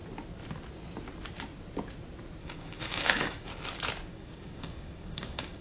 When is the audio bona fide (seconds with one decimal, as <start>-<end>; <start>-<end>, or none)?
0.0-2.4; 3.5-4.1

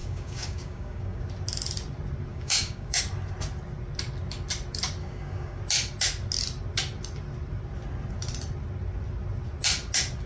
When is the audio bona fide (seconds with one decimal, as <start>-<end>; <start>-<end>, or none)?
1.2-2.3; 3.0-5.0; 5.6-10.3

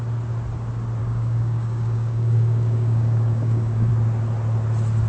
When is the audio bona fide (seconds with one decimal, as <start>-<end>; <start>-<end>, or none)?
0.0-1.0; 3.9-5.1

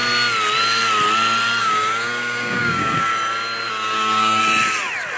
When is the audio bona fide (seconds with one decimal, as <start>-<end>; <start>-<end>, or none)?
0.0-1.6; 3.1-3.7; 4.4-5.2